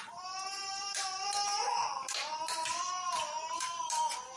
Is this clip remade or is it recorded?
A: recorded